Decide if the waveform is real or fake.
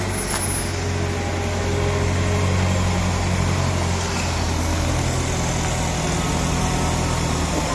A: real